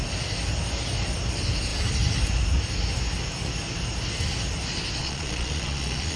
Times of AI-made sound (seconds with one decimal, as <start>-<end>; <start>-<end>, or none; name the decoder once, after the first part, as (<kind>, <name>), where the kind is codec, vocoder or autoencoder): 5.0-6.2 (vocoder, Vocos)